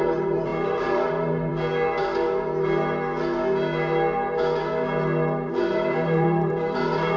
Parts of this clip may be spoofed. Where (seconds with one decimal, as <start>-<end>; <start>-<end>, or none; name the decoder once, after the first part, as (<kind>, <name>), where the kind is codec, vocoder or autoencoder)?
0.0-1.5 (vocoder, BigVGAN v2); 5.5-7.2

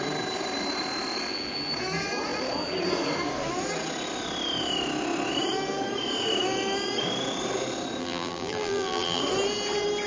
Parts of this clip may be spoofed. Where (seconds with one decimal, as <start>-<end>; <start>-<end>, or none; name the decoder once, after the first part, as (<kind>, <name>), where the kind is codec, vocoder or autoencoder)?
8.0-9.2 (vocoder, BigVGAN v2)

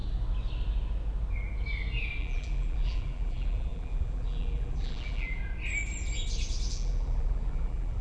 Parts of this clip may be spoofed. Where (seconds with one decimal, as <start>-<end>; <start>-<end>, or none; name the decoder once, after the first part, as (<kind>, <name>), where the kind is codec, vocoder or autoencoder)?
2.2-5.4 (vocoder, BigVGAN v2); 6.7-8.0

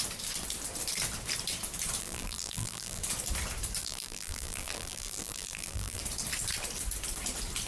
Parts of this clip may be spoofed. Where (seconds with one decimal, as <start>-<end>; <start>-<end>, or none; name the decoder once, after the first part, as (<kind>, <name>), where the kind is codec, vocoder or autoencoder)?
2.0-3.0 (vocoder, BigVGAN v2); 3.8-6.0

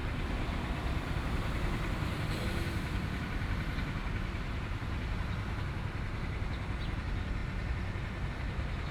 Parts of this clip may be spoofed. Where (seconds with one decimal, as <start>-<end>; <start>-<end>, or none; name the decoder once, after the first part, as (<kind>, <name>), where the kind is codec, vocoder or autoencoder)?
0.0-2.4 (vocoder, BigVGAN v2)